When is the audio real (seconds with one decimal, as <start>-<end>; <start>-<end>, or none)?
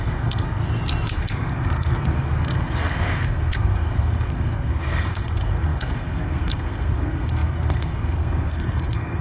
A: 0.6-1.1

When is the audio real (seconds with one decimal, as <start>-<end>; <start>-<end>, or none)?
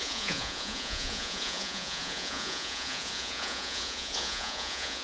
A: none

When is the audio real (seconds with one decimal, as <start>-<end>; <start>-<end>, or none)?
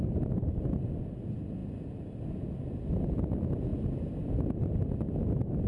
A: 0.0-5.7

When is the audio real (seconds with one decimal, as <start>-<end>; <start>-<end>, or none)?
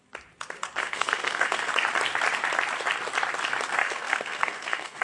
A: 0.0-0.8; 1.7-3.8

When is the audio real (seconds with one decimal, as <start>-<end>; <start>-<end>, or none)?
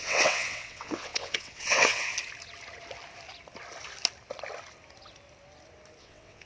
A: 2.1-6.0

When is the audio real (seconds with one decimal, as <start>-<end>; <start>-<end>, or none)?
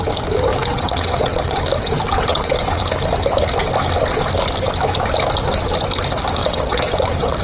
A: 0.0-0.5; 1.6-2.3; 2.8-6.4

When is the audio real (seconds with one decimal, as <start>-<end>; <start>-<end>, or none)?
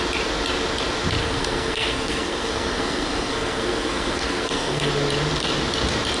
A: 0.0-1.2; 4.9-6.2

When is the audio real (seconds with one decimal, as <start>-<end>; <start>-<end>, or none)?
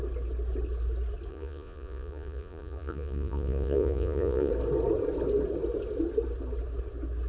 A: 0.0-1.3; 4.5-7.3